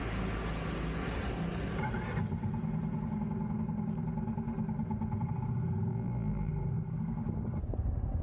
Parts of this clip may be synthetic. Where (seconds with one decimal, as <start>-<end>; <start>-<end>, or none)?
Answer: 5.9-6.5